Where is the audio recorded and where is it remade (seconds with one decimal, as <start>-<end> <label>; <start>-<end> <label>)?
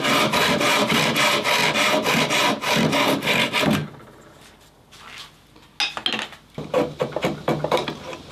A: 0.0-8.3 recorded